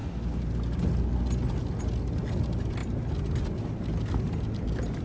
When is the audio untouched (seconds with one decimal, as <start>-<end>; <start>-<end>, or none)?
0.0-5.0